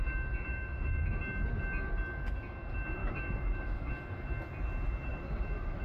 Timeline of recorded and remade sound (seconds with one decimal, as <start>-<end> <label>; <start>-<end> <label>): 0.0-0.5 recorded; 0.5-1.2 remade; 1.2-3.0 recorded; 3.0-3.9 remade; 3.9-5.1 recorded; 5.1-5.8 remade